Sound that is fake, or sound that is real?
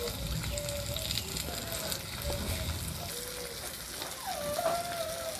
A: real